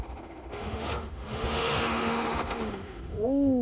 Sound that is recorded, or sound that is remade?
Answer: remade